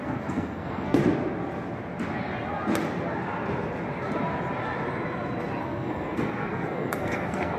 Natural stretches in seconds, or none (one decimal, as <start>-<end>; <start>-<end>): 1.0-5.6